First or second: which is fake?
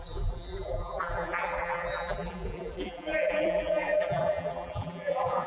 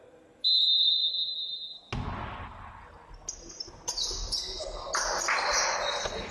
first